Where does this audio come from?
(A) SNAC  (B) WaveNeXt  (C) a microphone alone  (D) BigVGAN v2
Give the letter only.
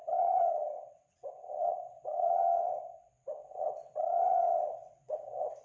B